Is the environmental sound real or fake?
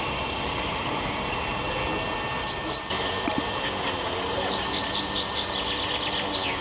real